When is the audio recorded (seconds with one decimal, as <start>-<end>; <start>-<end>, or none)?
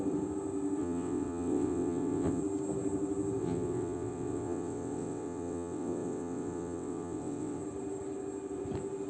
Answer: 0.0-0.8; 2.4-3.4; 7.6-9.1